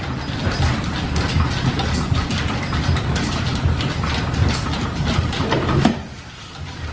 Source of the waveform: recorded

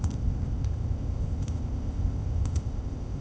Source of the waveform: remade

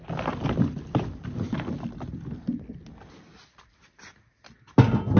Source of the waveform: recorded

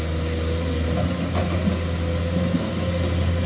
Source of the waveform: recorded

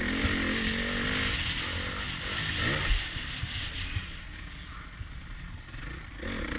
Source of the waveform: recorded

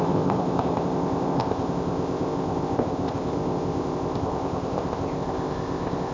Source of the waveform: remade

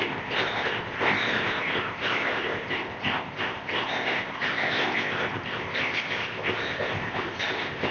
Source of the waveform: remade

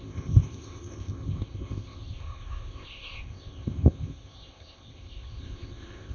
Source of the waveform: remade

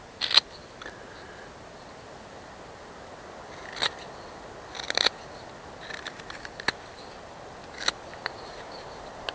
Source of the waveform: recorded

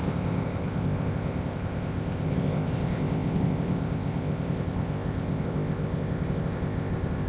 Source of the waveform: remade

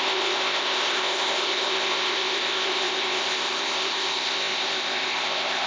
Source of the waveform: remade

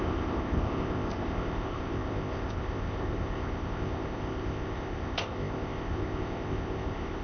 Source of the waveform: remade